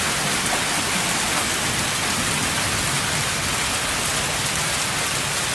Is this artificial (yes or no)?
no